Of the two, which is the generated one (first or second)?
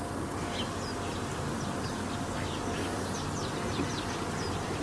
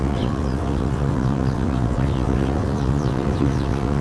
second